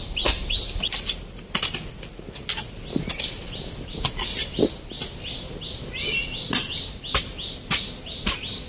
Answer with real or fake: real